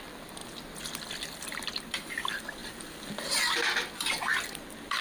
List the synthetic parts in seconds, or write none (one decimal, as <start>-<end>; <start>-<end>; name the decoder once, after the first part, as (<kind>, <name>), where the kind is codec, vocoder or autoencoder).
0.0-0.4 (vocoder, BigVGAN v2); 1.4-2.6; 3.4-5.0